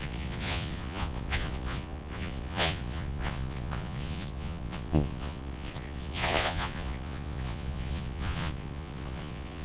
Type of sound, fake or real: fake